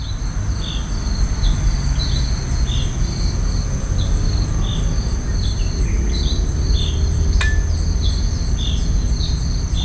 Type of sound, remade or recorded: recorded